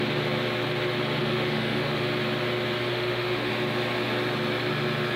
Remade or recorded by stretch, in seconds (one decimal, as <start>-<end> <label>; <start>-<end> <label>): 0.0-1.2 recorded; 1.2-2.0 remade; 2.0-2.9 recorded; 2.9-3.5 remade; 3.5-5.2 recorded

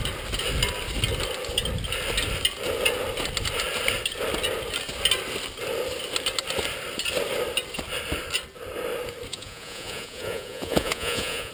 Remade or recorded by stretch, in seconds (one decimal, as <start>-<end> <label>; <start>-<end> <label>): 0.0-9.3 recorded; 9.3-11.5 remade